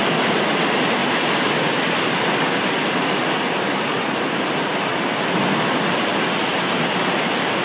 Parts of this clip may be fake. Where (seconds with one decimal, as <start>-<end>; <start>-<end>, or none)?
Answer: none